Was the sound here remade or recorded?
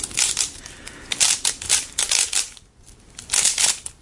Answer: recorded